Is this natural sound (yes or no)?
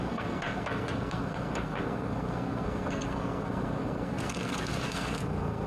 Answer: no